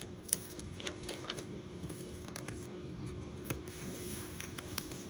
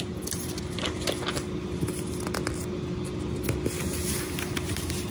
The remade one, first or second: first